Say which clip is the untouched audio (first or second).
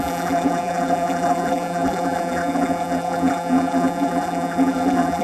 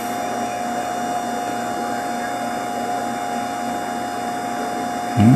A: second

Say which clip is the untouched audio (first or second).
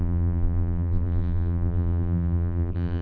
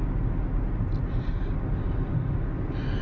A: second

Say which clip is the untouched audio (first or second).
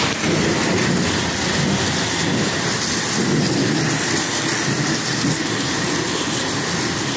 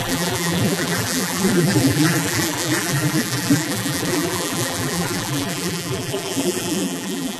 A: first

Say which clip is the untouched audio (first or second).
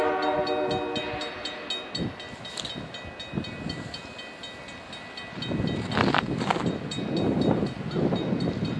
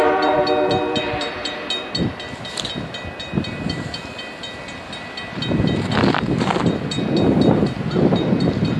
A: first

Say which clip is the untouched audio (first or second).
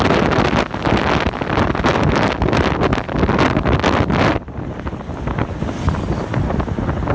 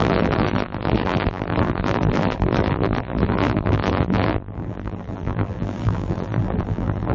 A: first